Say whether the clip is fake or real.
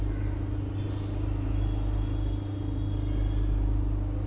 real